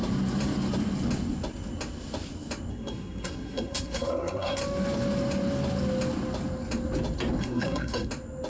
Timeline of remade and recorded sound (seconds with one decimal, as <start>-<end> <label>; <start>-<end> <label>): 0.0-2.7 recorded; 2.7-4.6 remade; 4.6-7.4 recorded; 7.4-8.1 remade; 8.1-8.5 recorded